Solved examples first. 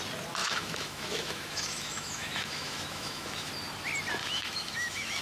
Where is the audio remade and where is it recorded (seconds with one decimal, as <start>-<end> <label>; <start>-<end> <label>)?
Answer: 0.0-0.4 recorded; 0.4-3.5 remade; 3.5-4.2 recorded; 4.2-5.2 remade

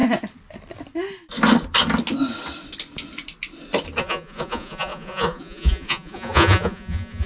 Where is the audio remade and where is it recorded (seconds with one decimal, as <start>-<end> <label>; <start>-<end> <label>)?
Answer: 0.0-4.0 recorded; 4.0-7.3 remade

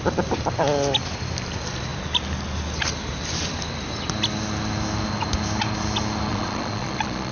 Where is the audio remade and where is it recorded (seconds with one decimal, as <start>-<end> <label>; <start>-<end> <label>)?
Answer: 0.0-6.3 recorded; 6.3-7.3 remade